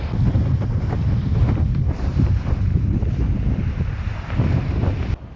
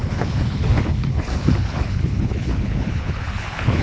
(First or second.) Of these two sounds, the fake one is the second